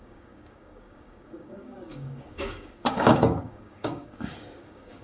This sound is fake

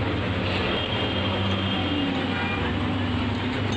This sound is real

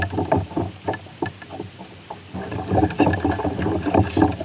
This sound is real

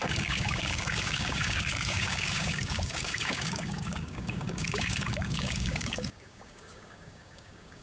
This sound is fake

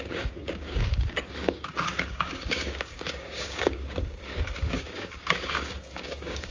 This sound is fake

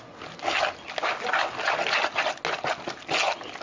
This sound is real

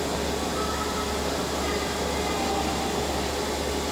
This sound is real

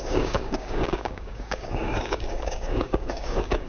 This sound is fake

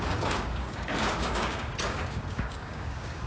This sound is fake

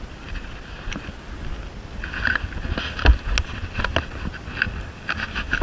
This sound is real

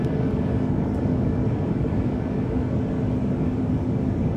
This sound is fake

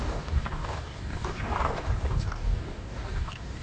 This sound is fake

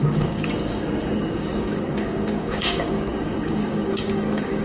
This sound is fake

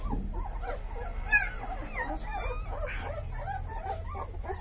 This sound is real